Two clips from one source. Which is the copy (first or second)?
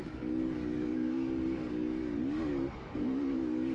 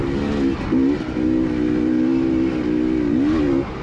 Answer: first